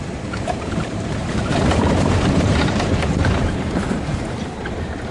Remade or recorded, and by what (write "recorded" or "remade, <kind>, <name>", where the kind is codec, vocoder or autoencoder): remade, vocoder, BigVGAN v2